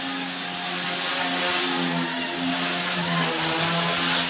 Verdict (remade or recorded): recorded